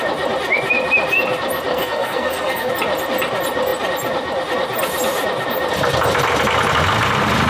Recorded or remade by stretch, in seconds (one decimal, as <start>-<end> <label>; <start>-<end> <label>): 0.0-1.7 recorded; 1.7-2.7 remade; 2.7-7.5 recorded